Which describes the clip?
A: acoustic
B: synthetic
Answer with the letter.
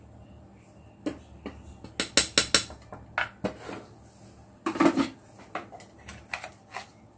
A